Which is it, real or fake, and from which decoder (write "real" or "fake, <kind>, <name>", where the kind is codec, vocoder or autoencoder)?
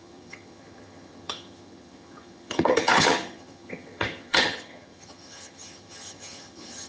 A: fake, vocoder, HiFi-GAN